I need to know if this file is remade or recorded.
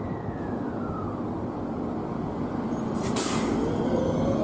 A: recorded